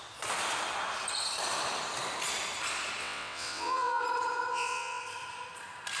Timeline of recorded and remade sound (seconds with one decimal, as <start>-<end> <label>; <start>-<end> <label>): 0.0-3.0 recorded; 3.0-4.0 remade; 4.0-4.5 recorded; 4.5-5.0 remade; 5.0-6.0 recorded